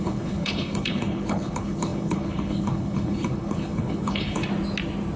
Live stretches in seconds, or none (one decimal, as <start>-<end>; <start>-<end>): 4.4-5.2